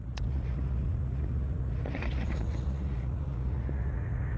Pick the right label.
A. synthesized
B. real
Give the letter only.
A